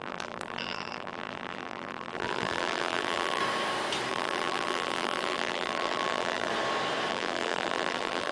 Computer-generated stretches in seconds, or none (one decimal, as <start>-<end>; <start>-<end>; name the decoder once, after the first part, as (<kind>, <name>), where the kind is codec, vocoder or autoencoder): 0.0-3.4 (vocoder, BigVGAN v2); 4.1-6.5; 7.1-8.3